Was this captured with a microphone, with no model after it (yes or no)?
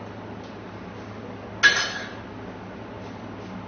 yes